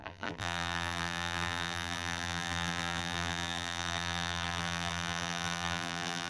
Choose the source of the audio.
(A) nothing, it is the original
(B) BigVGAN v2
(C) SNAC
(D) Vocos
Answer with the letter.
B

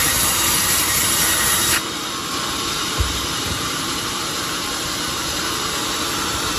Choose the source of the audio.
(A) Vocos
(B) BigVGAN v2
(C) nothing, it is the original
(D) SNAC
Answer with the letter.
B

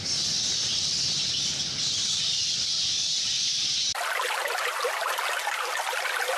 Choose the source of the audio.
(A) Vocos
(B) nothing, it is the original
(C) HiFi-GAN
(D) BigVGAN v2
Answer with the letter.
B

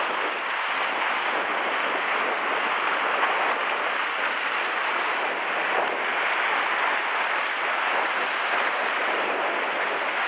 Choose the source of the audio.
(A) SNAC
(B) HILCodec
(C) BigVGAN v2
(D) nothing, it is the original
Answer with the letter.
D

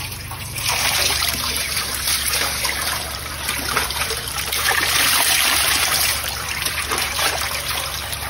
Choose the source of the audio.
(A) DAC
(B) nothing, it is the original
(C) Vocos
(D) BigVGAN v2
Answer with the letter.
D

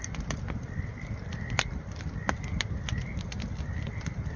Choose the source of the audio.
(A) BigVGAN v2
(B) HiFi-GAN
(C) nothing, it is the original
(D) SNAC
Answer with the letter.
C